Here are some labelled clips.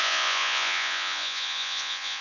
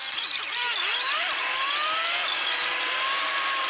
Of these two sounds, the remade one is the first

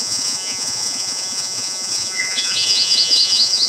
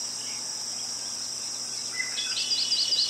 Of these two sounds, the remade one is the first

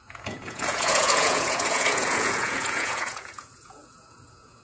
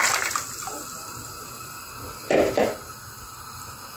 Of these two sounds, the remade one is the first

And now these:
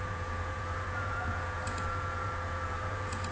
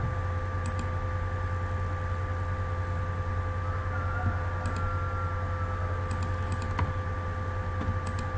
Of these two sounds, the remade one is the first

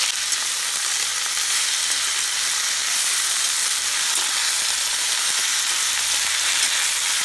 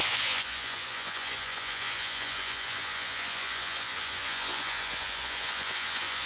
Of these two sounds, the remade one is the second